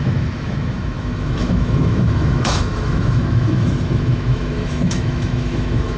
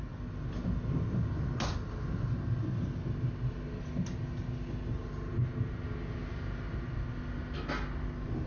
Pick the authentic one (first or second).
second